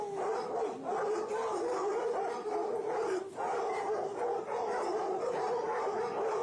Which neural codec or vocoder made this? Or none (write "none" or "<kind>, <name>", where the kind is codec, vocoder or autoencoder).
none